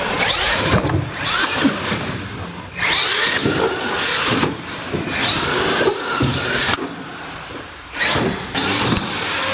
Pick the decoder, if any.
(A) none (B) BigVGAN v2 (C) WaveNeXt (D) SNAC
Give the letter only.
A